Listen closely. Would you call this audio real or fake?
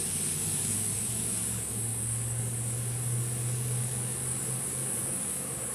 fake